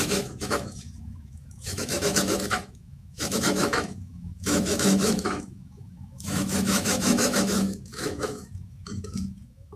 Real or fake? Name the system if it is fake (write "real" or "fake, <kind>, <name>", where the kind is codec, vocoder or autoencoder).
fake, autoencoder, DAC-VAE